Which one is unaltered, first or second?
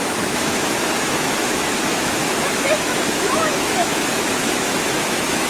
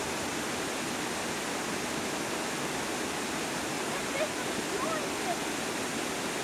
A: second